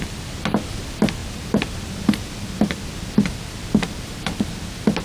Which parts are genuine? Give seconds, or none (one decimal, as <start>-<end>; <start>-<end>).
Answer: 0.0-1.2; 4.2-5.0